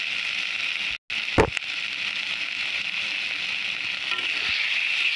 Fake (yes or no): no